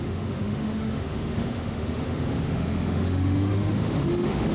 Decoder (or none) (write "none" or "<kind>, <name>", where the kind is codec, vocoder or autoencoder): autoencoder, DAC-VAE